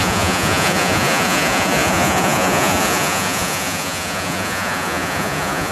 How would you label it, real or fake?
fake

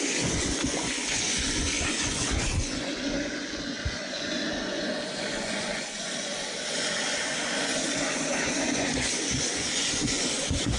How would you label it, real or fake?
fake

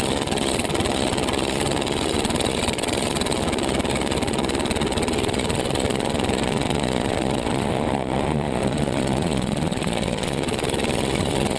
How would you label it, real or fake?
fake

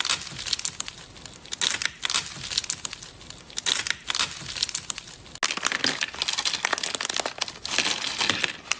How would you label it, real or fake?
real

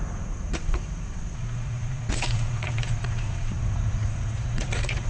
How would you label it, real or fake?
fake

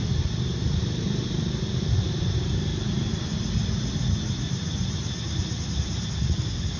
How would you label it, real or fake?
real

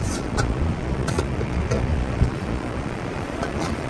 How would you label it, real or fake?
fake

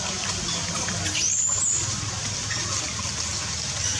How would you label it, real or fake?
real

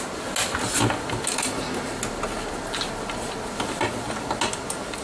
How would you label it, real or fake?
real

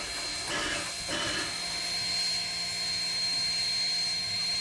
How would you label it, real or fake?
real